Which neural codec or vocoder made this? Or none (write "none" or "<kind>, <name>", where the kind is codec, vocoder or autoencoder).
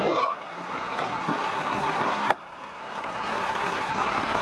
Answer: codec, SNAC